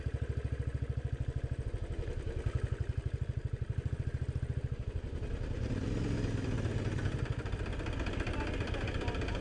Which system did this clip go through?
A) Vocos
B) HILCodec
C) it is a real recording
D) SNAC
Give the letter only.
C